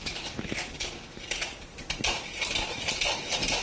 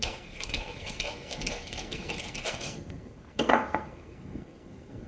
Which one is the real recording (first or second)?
first